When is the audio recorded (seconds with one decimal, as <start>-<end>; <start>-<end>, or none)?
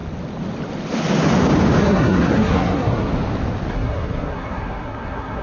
0.0-1.8; 3.1-3.7